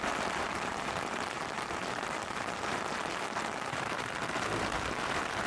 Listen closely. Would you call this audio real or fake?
fake